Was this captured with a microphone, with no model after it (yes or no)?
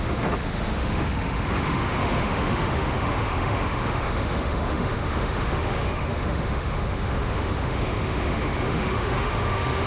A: no